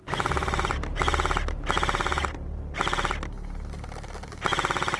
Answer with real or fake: real